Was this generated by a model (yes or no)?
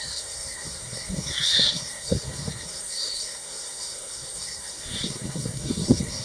yes